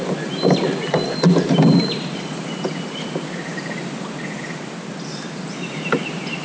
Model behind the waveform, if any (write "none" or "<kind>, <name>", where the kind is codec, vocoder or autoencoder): none